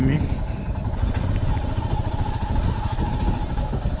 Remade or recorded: recorded